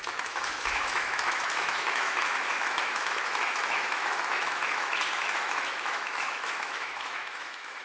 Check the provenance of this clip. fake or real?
fake